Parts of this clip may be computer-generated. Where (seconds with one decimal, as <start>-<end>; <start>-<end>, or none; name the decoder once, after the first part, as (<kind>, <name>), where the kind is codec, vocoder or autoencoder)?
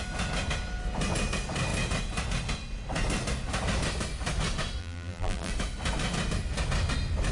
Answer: 4.8-5.5 (vocoder, BigVGAN v2)